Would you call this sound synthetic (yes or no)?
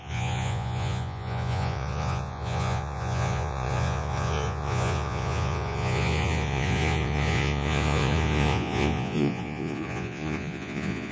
yes